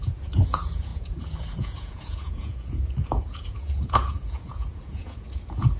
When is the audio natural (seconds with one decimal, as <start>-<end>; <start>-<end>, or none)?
none